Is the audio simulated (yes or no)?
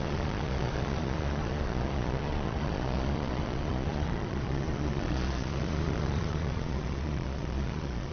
yes